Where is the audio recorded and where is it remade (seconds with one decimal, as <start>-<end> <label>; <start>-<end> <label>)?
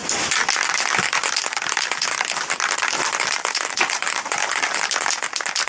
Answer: 0.0-5.7 recorded